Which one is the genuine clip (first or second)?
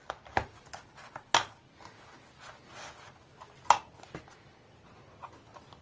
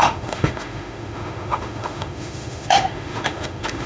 first